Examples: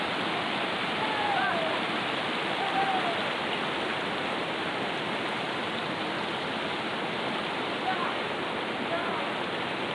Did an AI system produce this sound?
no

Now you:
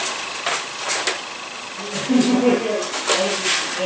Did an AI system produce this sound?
no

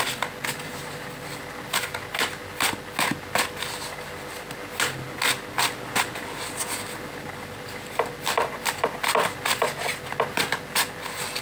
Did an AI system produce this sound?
no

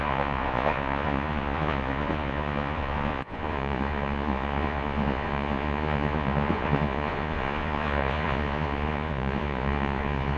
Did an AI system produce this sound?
yes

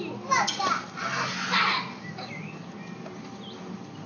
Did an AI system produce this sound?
no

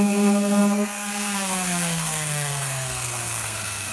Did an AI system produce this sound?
yes